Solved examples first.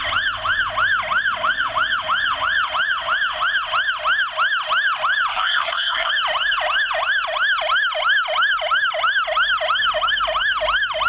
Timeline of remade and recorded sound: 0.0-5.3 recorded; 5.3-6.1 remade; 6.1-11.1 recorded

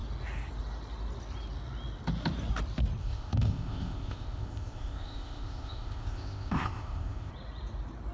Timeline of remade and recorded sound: 0.0-3.0 recorded; 3.0-7.3 remade; 7.3-8.1 recorded

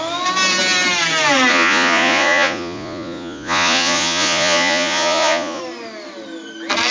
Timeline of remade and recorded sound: 0.0-1.5 recorded; 1.5-5.6 remade; 5.6-6.9 recorded

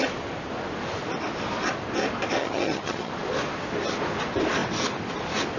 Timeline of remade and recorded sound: 0.0-2.4 recorded; 2.4-3.1 remade; 3.1-5.6 recorded

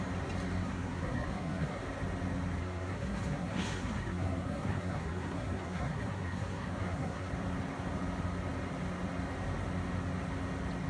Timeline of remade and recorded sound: 0.0-0.6 recorded; 0.6-1.8 remade; 1.8-2.6 recorded; 2.6-7.3 remade; 7.3-10.9 recorded

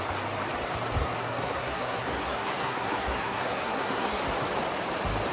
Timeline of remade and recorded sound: 0.0-1.0 recorded; 1.0-4.2 remade; 4.2-5.3 recorded